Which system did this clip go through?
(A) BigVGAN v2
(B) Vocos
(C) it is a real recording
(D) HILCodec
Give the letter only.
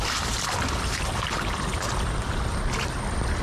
A